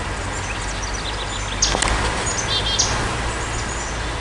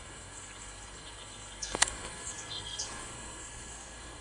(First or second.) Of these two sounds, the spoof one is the second